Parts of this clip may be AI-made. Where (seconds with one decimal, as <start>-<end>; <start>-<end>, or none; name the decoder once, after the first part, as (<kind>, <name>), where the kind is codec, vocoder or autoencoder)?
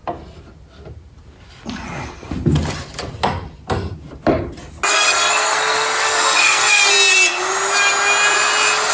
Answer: 4.9-6.8 (codec, SNAC)